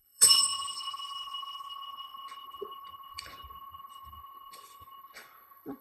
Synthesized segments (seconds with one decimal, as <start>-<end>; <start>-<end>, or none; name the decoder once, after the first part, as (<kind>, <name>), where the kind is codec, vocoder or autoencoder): 0.0-5.8 (codec, HILCodec)